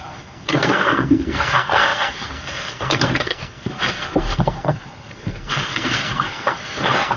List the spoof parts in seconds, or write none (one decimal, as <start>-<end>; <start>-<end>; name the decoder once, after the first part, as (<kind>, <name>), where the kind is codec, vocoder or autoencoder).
0.0-7.2 (codec, SNAC)